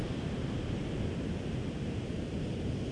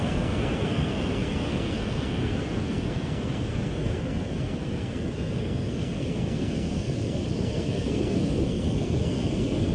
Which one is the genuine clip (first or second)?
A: first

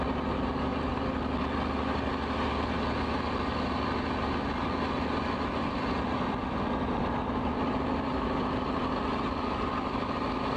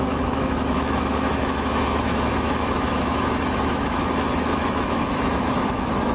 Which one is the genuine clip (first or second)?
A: first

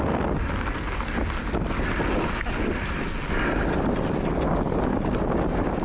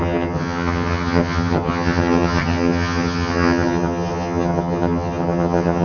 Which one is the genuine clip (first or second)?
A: first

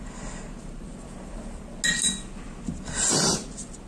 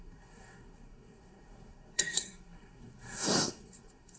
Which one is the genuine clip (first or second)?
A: first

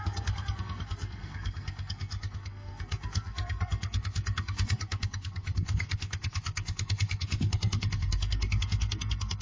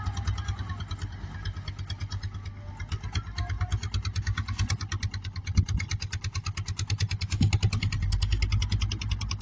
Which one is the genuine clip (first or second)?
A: second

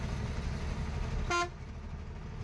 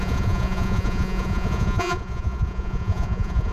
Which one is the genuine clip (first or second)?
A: first